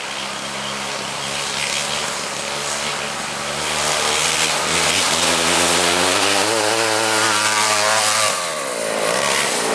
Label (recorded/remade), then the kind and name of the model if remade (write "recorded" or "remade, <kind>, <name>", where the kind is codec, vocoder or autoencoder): recorded